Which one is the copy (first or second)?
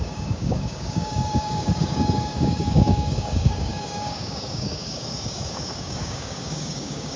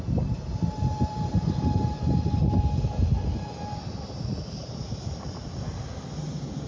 first